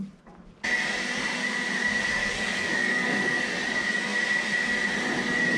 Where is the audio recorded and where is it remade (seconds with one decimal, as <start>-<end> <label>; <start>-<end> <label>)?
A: 0.0-2.2 recorded; 2.2-3.4 remade; 3.4-5.6 recorded

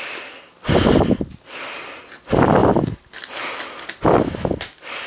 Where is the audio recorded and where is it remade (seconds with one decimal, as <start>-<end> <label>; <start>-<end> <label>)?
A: 0.0-5.1 recorded

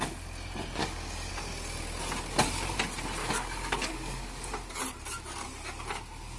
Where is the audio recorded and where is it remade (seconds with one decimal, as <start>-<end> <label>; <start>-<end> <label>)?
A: 0.0-0.8 recorded; 0.8-1.3 remade; 1.3-3.2 recorded; 3.2-4.5 remade; 4.5-6.4 recorded

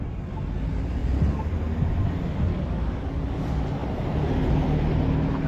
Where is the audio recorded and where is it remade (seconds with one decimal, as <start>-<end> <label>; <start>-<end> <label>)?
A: 0.0-2.5 recorded; 2.5-3.4 remade; 3.4-5.5 recorded

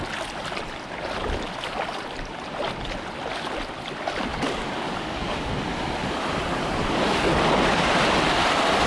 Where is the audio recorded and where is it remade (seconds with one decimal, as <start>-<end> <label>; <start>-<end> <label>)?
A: 0.0-4.3 recorded; 4.3-5.5 remade; 5.5-6.8 recorded; 6.8-7.3 remade; 7.3-8.9 recorded

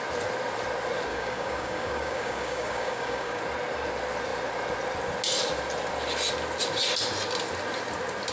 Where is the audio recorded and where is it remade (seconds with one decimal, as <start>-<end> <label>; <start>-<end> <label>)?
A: 0.0-1.1 recorded; 1.1-3.4 remade; 3.4-8.3 recorded